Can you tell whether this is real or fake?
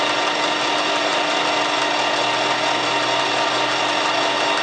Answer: real